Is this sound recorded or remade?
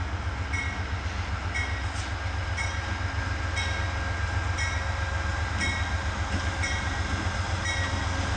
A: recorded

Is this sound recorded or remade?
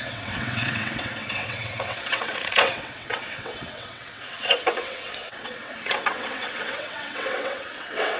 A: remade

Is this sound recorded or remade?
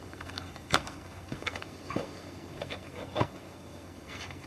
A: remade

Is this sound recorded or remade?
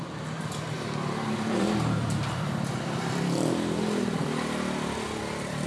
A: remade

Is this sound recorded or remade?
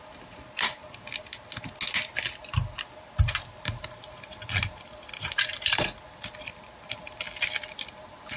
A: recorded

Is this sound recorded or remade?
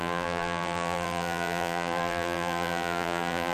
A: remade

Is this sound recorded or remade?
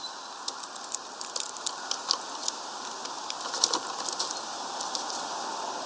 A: recorded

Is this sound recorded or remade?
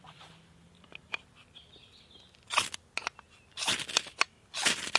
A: recorded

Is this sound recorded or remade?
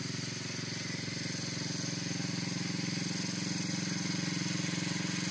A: recorded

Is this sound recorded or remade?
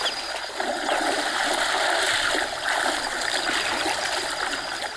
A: recorded